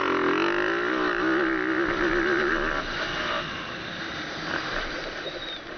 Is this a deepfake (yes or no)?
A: no